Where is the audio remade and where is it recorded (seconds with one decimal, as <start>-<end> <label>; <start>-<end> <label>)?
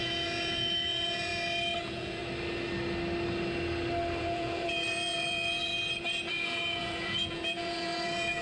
0.0-1.3 remade; 1.3-1.8 recorded; 1.8-2.2 remade; 2.2-4.2 recorded; 4.2-5.7 remade; 5.7-6.3 recorded; 6.3-8.4 remade